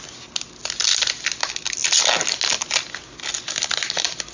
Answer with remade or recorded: recorded